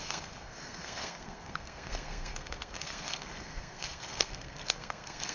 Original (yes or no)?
no